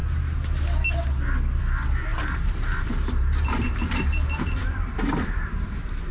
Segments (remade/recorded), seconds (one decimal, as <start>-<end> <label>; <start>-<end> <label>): 0.0-2.1 recorded; 2.1-6.1 remade